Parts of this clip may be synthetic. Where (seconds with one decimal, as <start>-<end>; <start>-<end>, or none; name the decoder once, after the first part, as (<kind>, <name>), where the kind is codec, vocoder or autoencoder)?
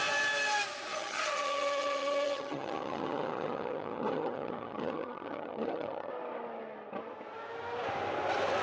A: 0.9-6.1 (vocoder, HiFi-GAN)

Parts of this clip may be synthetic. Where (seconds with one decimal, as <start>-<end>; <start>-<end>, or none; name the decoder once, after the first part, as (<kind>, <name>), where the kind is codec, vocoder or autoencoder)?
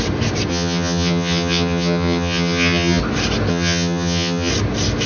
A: 0.5-3.0 (vocoder, HiFi-GAN); 3.5-4.5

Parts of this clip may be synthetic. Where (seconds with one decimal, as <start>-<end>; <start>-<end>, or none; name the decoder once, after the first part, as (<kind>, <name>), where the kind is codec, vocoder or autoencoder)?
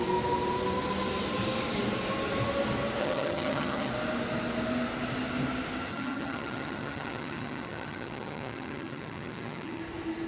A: 3.0-3.9 (vocoder, HiFi-GAN); 5.9-9.8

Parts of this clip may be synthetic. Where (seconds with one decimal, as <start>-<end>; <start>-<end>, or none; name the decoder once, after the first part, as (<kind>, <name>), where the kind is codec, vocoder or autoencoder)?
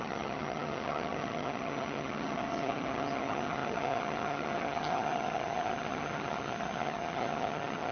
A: 0.0-7.9 (vocoder, HiFi-GAN)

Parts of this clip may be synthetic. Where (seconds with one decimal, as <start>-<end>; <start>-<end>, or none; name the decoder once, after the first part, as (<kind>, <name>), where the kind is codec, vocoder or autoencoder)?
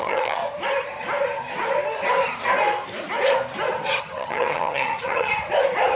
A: 0.0-0.4 (vocoder, HiFi-GAN); 4.0-5.3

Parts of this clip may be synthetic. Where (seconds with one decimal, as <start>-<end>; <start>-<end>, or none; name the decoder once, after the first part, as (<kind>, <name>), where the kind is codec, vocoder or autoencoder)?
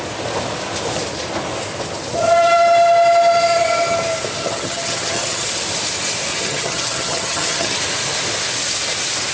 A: 4.4-5.5 (vocoder, HiFi-GAN); 6.3-7.7